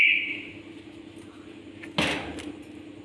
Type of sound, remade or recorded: recorded